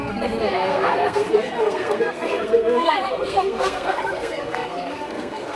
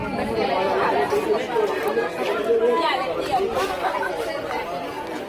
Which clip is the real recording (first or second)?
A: second